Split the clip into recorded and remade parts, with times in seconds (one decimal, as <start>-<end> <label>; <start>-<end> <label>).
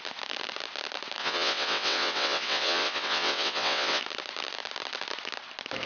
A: 0.0-1.2 recorded; 1.2-4.0 remade; 4.0-5.9 recorded